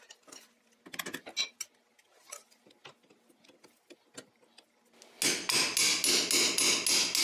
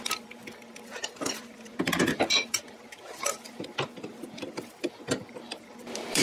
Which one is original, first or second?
first